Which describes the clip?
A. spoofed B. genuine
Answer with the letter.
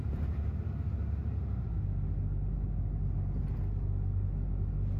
B